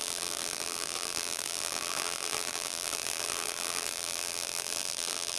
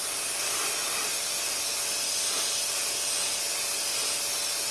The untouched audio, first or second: second